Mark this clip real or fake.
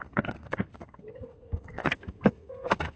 fake